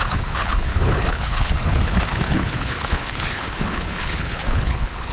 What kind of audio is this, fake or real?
fake